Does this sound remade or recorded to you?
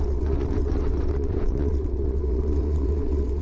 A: remade